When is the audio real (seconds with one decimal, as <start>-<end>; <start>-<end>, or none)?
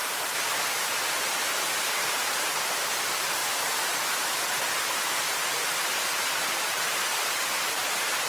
0.0-1.2; 3.4-5.8